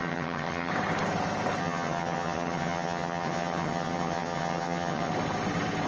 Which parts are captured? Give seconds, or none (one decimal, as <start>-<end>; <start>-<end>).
0.7-1.6; 5.1-5.9